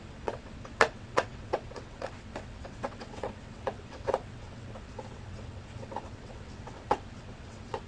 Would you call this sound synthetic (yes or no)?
yes